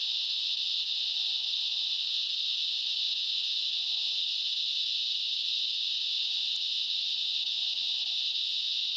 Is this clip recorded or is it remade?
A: remade